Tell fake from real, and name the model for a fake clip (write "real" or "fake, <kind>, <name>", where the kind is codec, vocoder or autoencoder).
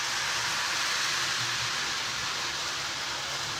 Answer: real